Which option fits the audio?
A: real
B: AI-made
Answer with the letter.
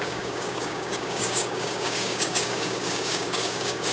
B